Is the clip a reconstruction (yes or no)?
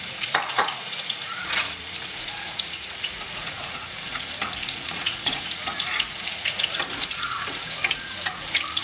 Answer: yes